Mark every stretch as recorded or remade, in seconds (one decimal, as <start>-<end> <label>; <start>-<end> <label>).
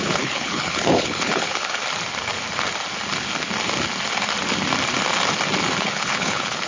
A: 0.0-1.8 remade; 1.8-5.8 recorded; 5.8-6.7 remade